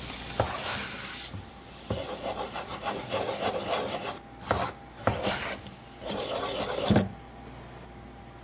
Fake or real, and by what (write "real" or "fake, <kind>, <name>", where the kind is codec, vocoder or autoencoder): real